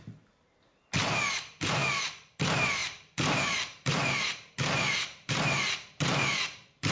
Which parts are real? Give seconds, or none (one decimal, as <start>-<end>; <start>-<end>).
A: 0.0-2.8